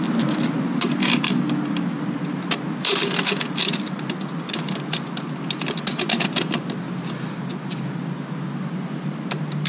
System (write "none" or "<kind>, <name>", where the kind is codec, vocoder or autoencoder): none